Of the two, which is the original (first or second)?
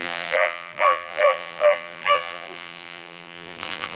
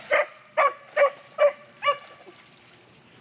second